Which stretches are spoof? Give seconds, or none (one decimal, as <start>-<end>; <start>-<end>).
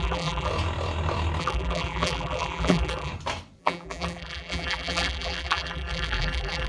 0.0-0.5; 1.4-3.1; 3.6-6.7